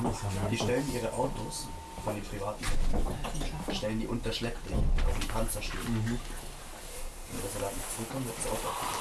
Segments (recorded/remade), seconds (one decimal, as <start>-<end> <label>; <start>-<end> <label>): 0.0-6.9 recorded; 6.9-7.4 remade; 7.4-9.0 recorded